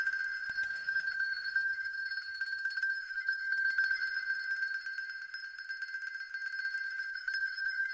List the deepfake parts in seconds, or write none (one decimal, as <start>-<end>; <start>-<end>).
0.6-4.0; 7.1-7.9